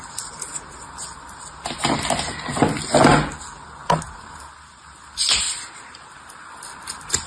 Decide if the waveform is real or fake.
real